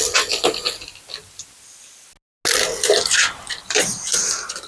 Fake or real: real